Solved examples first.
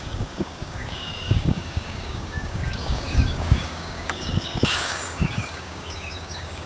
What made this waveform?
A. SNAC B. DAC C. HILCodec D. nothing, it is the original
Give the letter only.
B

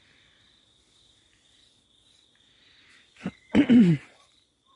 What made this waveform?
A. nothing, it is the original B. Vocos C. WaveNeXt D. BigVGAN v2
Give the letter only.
A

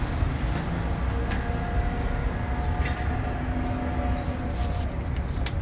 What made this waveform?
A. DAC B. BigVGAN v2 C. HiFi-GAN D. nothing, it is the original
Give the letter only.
D